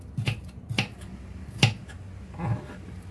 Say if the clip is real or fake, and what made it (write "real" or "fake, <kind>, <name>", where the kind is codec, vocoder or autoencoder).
real